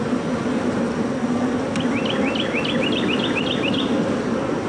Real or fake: real